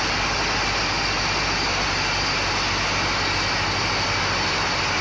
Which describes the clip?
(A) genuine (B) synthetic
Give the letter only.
A